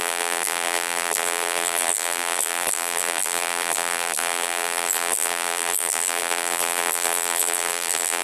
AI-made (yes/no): yes